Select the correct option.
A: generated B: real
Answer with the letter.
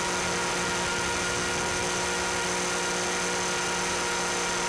B